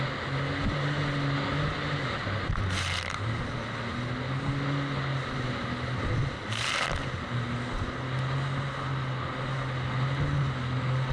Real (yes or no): yes